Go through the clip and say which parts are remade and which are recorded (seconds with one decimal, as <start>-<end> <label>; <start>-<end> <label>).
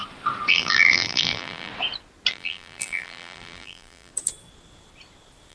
0.0-0.5 recorded; 0.5-1.7 remade; 1.7-2.3 recorded; 2.3-4.1 remade; 4.1-5.5 recorded